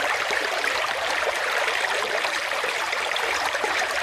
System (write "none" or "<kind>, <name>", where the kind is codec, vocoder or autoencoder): vocoder, BigVGAN v2